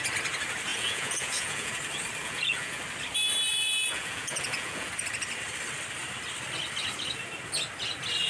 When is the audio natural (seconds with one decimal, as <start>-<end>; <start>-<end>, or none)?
0.0-0.7; 1.7-2.2; 2.8-3.5; 4.9-8.3